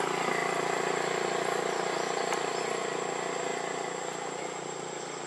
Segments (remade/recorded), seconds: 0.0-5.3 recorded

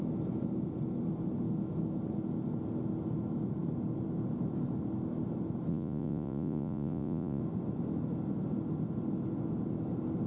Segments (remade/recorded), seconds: 0.0-5.7 recorded; 5.7-7.4 remade; 7.4-10.3 recorded

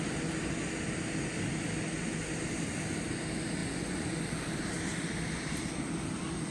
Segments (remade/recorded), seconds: 0.0-3.6 recorded; 3.6-4.2 remade; 4.2-6.5 recorded

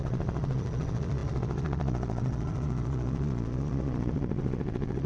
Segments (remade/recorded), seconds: 0.0-5.1 remade

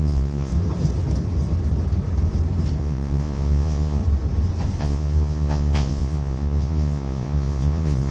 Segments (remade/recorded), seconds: 0.0-0.5 remade; 0.5-2.8 recorded; 2.8-4.0 remade; 4.0-4.8 recorded; 4.8-8.1 remade

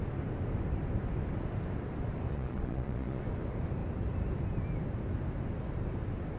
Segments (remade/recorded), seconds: 0.0-2.3 recorded; 2.3-3.2 remade; 3.2-6.4 recorded